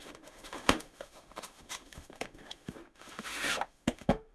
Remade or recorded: remade